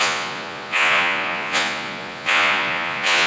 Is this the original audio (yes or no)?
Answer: no